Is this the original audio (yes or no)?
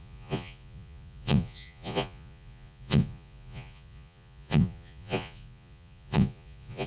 no